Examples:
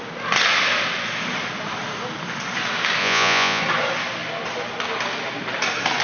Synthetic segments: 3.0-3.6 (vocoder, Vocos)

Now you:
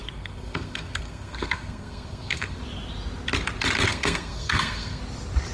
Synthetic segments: 0.0-2.6 (codec, SNAC); 3.9-5.0

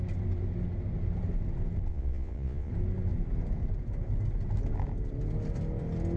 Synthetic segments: 1.9-2.7 (vocoder, Vocos)

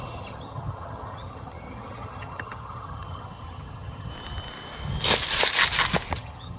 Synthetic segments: 0.0-4.1 (vocoder, HiFi-GAN); 6.1-6.6

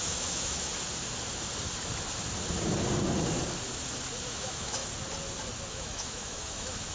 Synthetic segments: 0.0-0.7 (autoencoder, DAC-VAE); 4.2-4.8; 5.7-6.9